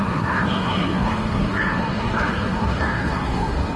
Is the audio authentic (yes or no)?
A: no